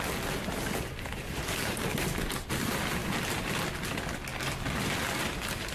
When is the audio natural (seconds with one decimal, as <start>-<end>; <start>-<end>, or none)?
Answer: 0.0-5.7